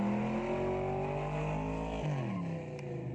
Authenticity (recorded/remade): recorded